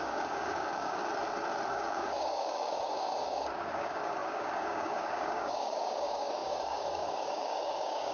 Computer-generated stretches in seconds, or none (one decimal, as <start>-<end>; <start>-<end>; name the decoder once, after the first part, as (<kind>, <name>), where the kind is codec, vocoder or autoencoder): 0.0-1.0 (codec, DAC); 1.7-8.1